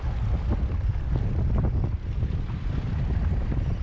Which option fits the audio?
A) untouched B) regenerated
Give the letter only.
A